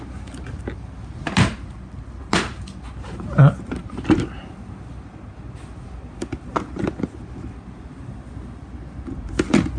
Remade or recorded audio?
recorded